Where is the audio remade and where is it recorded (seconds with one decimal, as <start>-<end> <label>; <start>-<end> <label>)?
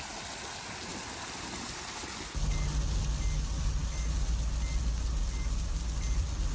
0.0-6.5 recorded